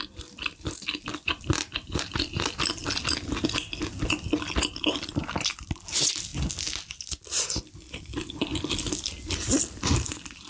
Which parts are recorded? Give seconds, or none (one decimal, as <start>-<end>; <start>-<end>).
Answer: 0.0-10.5